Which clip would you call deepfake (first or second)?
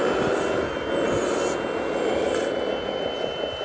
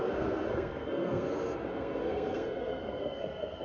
second